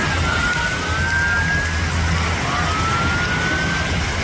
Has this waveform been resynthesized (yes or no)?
no